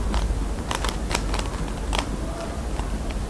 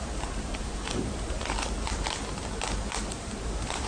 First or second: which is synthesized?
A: second